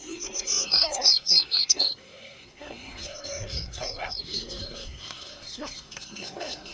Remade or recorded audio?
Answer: remade